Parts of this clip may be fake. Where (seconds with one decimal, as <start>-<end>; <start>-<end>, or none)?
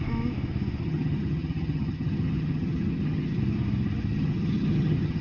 0.8-3.4; 4.1-5.2